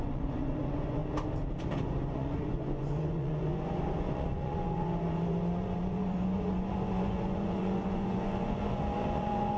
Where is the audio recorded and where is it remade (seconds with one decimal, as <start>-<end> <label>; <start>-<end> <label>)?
0.0-1.0 remade; 1.0-1.6 recorded; 1.6-9.6 remade